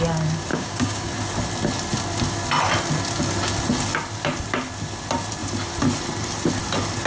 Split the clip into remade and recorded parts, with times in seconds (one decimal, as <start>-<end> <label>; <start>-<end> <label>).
0.0-0.5 recorded; 0.5-1.1 remade; 1.1-7.1 recorded